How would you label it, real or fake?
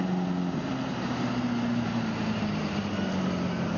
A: real